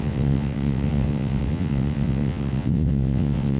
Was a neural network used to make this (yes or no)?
yes